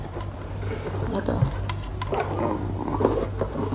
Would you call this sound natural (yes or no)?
yes